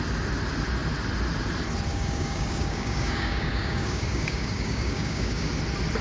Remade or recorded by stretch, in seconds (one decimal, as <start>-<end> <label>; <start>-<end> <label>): 0.0-1.9 recorded; 1.9-5.5 remade; 5.5-6.0 recorded